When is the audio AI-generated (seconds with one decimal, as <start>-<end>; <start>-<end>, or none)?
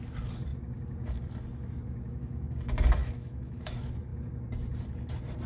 3.0-3.6